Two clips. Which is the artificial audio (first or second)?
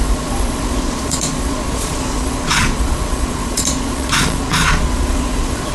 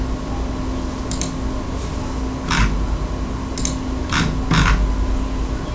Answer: first